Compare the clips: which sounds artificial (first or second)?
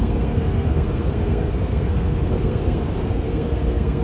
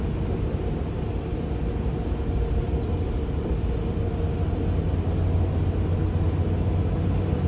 first